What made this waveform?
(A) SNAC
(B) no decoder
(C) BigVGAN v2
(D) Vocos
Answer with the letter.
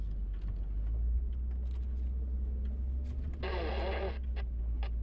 B